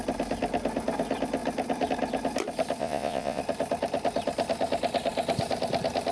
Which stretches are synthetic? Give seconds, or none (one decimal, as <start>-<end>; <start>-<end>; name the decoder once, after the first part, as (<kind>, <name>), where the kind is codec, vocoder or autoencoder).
2.8-3.4 (vocoder, Vocos)